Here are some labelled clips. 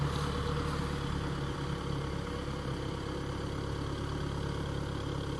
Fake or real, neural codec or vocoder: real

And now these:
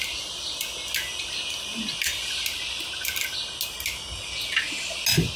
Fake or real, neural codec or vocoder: real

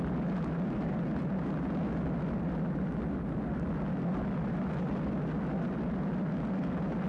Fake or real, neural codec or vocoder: real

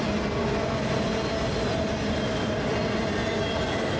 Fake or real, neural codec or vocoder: real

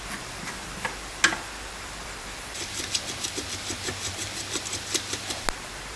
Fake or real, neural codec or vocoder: fake, vocoder, BigVGAN v2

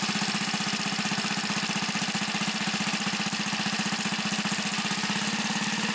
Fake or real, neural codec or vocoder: real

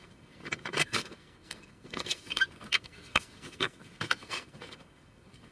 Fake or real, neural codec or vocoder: fake, codec, SNAC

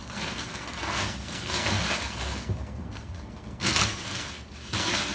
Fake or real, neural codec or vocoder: fake, codec, SNAC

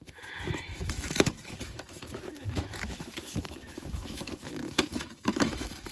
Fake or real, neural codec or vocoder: fake, autoencoder, DAC-VAE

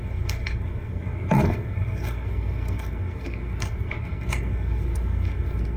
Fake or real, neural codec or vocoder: fake, codec, SNAC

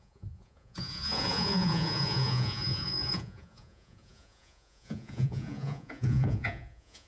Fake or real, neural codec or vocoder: fake, vocoder, Vocos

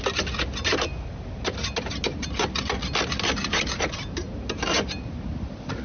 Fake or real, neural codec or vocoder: real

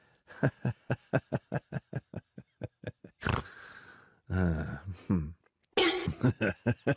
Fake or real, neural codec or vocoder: real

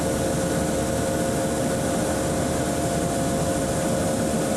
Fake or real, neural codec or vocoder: real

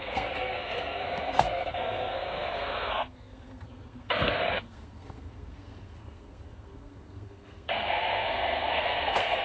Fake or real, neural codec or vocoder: fake, codec, SNAC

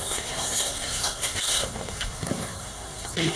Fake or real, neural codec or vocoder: fake, codec, SNAC